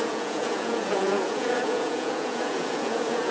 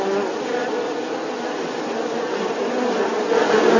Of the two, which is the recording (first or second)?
second